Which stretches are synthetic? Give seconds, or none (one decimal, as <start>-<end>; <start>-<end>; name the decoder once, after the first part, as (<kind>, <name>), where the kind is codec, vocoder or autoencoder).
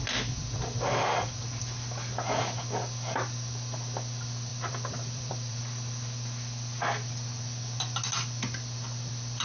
4.5-5.6 (vocoder, BigVGAN v2)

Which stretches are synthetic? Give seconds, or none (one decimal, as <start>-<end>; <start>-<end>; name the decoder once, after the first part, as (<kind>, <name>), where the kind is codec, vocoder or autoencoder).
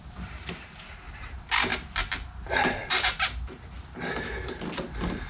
none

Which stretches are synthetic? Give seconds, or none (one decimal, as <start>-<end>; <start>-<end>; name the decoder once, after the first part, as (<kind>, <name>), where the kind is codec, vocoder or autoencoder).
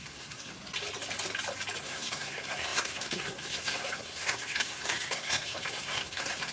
0.0-0.5 (codec, SNAC); 1.8-6.5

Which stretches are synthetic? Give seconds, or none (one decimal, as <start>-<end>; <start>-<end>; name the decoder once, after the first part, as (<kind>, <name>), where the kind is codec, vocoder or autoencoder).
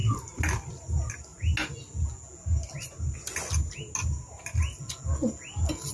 none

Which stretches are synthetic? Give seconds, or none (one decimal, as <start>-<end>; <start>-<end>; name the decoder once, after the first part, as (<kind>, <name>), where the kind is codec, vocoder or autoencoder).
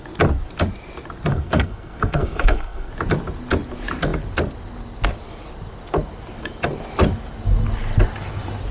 1.3-2.9 (codec, SNAC)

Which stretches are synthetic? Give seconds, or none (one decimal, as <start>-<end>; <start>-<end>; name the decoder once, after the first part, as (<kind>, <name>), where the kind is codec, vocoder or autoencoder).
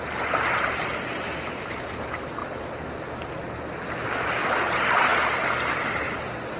none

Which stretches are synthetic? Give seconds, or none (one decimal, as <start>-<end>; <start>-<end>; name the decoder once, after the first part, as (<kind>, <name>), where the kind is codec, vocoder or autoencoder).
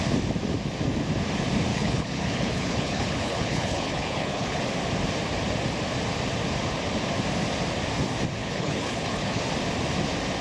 1.7-4.6 (codec, HILCodec); 8.4-9.4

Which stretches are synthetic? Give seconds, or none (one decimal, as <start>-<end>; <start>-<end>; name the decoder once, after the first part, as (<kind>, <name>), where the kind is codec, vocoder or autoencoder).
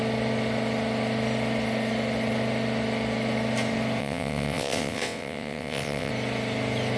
4.0-6.1 (vocoder, WaveNeXt)